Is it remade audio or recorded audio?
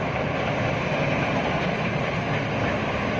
recorded